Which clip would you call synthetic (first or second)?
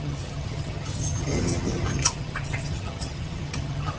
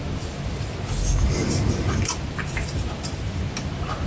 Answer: first